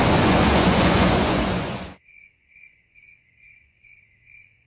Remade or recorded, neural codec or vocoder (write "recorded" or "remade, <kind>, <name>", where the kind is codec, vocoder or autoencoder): remade, vocoder, Vocos